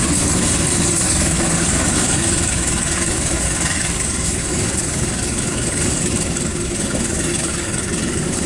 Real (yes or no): no